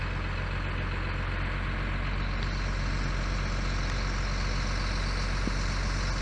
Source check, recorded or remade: recorded